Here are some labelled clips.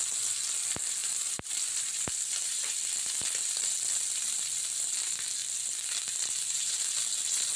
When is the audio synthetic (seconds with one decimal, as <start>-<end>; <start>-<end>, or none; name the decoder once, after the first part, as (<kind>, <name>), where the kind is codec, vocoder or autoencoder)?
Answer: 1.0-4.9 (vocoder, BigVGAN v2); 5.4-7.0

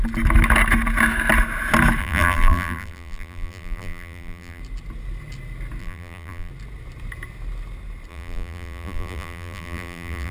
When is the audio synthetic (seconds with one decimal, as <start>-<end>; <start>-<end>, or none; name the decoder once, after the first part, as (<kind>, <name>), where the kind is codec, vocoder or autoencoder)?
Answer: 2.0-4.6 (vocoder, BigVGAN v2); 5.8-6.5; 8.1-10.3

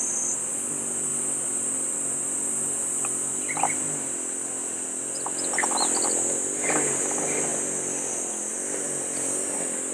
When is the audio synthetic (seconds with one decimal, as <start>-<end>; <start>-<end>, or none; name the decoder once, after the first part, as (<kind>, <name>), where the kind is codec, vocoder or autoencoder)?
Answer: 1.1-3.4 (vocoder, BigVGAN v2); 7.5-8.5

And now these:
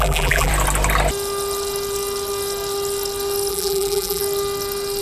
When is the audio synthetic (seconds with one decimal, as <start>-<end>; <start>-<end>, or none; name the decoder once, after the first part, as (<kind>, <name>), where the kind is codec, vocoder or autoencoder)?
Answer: 0.0-0.5 (vocoder, BigVGAN v2); 3.5-4.2

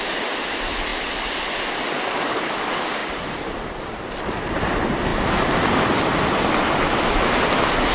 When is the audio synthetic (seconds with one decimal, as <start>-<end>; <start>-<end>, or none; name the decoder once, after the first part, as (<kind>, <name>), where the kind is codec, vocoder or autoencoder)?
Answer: 3.0-4.1 (vocoder, BigVGAN v2)